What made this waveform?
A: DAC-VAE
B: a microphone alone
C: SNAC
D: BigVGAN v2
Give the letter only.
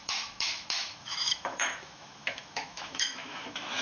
A